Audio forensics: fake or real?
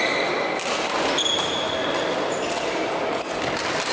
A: real